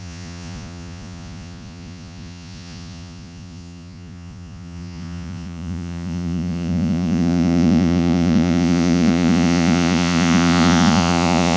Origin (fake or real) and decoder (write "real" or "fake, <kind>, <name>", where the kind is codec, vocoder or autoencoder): fake, vocoder, Vocos